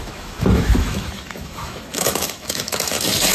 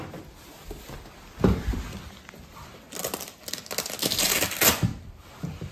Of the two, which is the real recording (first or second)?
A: second